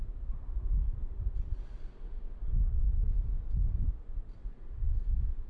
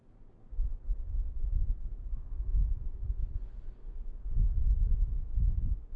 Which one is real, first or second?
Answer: first